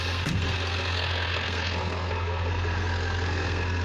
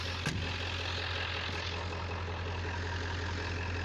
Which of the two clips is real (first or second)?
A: second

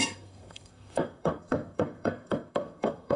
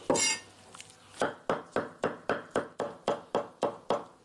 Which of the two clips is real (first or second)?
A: second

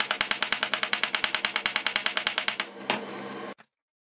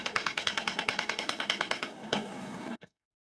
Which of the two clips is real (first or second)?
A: first